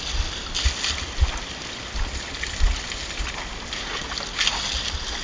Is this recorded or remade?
recorded